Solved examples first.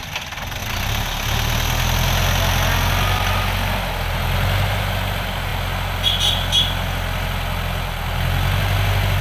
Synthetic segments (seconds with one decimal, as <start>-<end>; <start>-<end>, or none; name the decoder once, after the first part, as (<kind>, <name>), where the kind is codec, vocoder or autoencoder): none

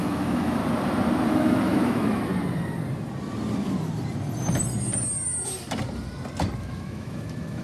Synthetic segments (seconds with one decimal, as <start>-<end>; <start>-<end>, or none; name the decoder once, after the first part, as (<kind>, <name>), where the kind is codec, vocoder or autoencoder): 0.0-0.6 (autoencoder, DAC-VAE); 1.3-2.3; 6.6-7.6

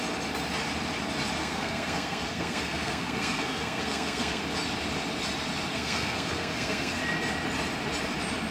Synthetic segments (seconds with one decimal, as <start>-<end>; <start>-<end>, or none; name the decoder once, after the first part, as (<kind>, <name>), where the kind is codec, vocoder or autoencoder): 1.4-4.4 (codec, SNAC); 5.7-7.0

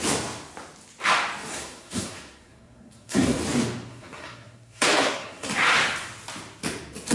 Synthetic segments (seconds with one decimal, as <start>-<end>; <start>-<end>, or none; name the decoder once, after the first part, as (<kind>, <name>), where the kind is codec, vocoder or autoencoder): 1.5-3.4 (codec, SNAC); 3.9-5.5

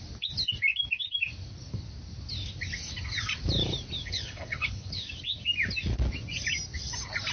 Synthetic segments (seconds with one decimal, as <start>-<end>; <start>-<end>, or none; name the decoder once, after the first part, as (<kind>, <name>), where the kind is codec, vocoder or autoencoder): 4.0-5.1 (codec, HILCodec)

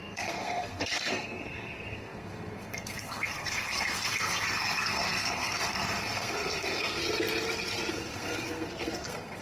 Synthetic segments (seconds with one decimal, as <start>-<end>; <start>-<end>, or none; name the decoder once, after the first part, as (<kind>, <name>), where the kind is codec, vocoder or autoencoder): 0.0-7.0 (codec, SNAC); 7.9-9.4